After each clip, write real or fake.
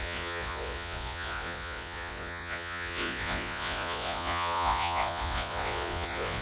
fake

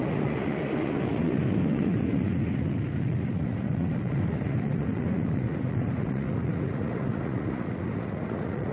fake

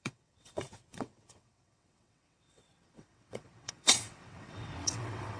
fake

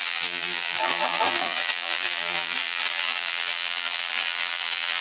fake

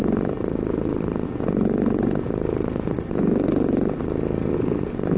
real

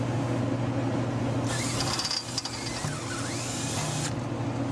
real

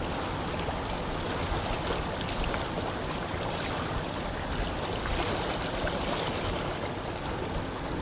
fake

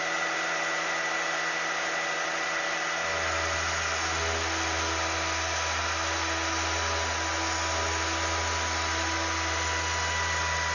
real